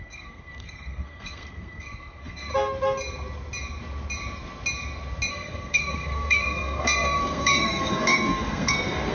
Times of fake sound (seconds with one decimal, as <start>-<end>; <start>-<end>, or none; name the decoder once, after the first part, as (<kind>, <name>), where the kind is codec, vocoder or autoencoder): 0.0-2.5 (codec, SNAC); 5.3-9.1